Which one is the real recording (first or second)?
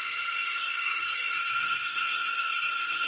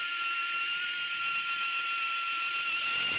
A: second